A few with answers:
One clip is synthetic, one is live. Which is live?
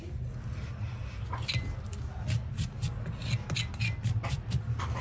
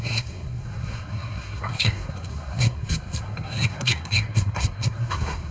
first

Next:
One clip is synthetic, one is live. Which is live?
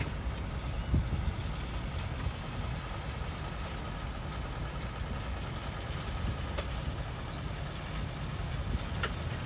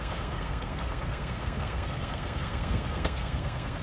first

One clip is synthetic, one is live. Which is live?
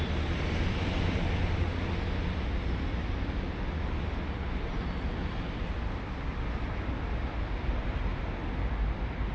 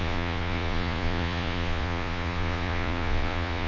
first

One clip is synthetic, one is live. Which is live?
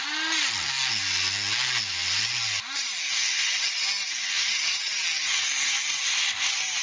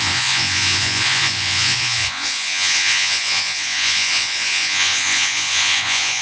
first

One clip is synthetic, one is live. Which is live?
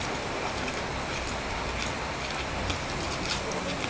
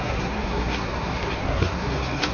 first